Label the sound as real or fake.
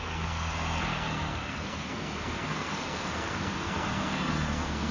fake